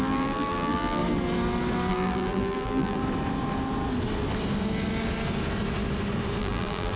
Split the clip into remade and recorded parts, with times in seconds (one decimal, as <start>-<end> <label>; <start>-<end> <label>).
0.0-1.0 remade; 1.0-1.9 recorded; 1.9-3.0 remade; 3.0-6.4 recorded; 6.4-7.0 remade